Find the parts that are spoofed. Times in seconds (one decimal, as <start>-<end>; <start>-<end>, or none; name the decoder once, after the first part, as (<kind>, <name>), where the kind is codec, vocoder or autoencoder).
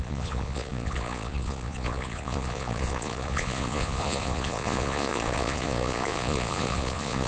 0.0-7.3 (vocoder, Vocos)